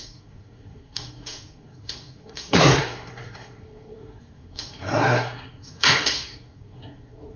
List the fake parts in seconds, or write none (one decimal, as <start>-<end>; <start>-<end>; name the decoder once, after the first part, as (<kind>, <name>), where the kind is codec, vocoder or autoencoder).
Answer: 0.0-7.4 (codec, SNAC)